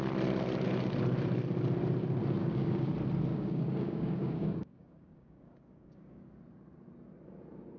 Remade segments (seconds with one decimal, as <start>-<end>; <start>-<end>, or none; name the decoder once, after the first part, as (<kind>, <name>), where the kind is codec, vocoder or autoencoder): 2.4-2.9 (codec, DAC); 3.3-6.3